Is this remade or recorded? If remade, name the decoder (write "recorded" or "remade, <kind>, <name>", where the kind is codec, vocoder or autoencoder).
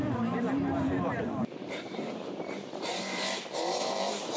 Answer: remade, vocoder, BigVGAN v2